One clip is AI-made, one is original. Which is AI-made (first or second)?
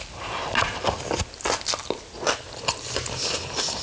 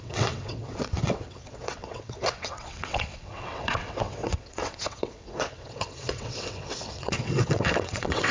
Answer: second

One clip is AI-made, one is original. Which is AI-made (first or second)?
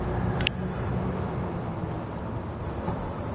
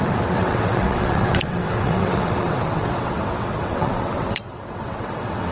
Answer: second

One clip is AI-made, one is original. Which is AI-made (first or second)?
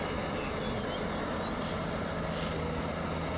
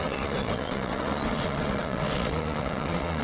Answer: second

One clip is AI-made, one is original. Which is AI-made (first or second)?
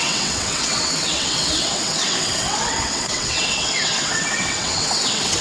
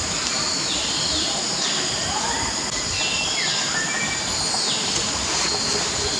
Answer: first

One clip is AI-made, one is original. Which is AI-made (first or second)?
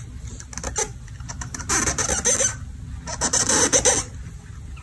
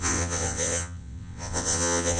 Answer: second